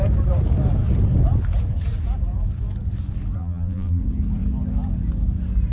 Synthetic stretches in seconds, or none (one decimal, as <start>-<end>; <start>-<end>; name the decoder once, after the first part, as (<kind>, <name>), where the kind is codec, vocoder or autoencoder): 3.4-4.0 (vocoder, BigVGAN v2)